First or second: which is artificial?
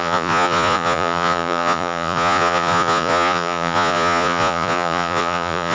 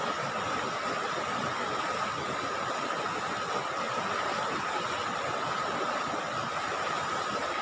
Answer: first